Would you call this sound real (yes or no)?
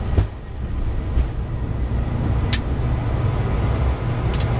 yes